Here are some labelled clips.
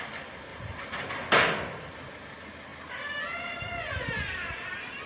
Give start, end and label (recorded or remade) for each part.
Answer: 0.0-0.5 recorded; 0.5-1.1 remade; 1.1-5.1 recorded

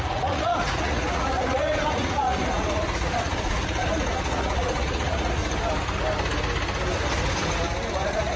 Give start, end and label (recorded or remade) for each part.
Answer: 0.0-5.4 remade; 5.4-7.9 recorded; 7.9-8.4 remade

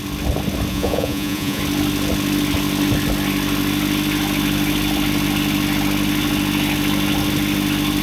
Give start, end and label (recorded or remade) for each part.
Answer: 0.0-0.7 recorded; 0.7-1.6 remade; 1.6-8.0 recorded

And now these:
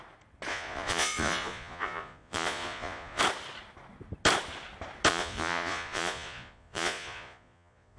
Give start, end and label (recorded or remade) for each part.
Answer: 0.0-0.5 recorded; 0.5-3.2 remade; 3.2-5.1 recorded; 5.1-8.0 remade

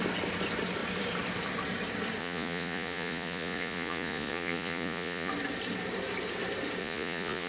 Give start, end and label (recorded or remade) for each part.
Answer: 0.0-2.2 recorded; 2.2-5.3 remade; 5.3-6.8 recorded; 6.8-7.5 remade

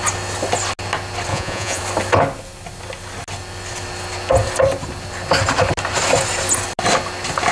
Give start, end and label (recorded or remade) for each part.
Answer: 0.0-1.3 recorded; 1.3-1.8 remade; 1.8-7.5 recorded

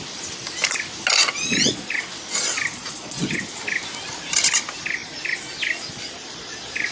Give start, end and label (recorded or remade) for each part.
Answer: 0.0-1.2 recorded; 1.2-2.0 remade; 2.0-2.7 recorded; 2.7-3.4 remade; 3.4-6.9 recorded